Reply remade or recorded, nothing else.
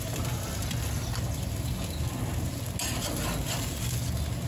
recorded